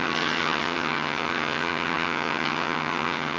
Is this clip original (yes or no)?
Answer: no